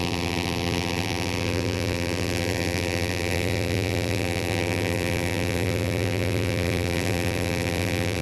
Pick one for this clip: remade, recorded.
remade